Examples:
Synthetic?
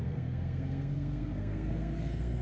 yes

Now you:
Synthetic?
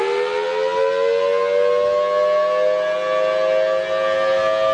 no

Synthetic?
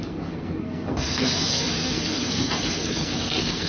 yes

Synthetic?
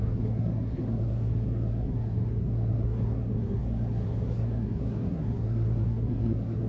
yes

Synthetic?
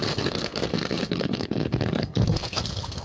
yes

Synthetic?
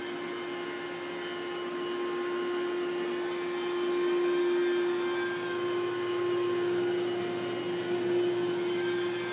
no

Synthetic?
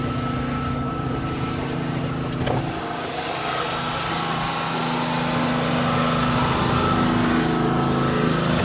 no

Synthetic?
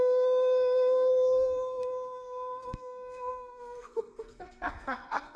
yes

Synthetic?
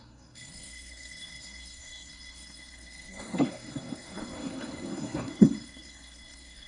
yes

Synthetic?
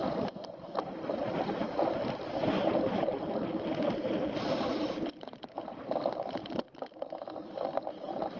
no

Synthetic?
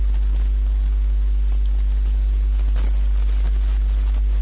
no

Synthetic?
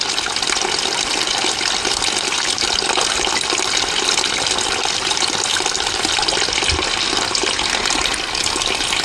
no